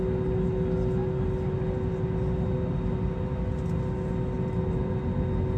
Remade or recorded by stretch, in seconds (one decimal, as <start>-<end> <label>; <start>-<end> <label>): 0.0-5.6 recorded